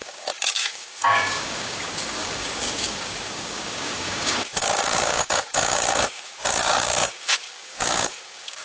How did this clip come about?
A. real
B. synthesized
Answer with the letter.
B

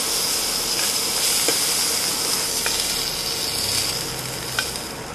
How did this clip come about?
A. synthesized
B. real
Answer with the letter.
B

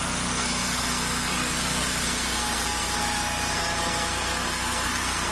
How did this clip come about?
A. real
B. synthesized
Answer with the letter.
B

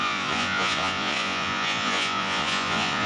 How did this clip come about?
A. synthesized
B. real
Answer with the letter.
A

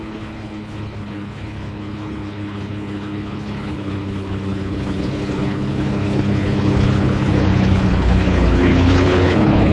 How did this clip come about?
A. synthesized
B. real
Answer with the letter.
A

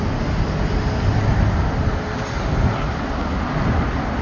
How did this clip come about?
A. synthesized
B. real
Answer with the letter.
B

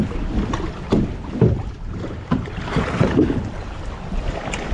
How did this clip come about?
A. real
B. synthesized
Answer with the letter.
B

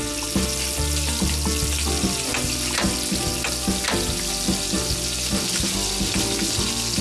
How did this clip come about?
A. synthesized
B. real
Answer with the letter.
B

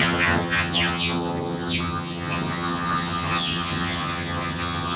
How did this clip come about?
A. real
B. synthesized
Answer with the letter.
B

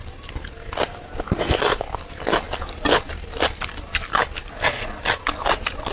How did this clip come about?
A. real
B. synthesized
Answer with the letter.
A